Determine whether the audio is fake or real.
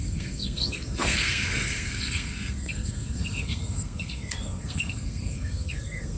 fake